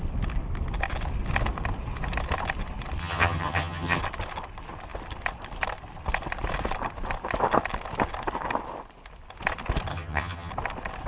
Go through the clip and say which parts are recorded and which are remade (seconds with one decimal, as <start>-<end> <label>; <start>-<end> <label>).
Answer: 0.0-3.0 recorded; 3.0-4.0 remade; 4.0-9.9 recorded; 9.9-10.5 remade; 10.5-11.1 recorded